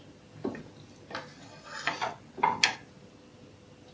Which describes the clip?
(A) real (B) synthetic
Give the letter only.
A